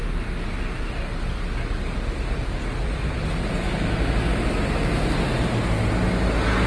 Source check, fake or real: real